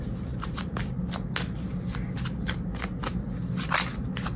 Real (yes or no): yes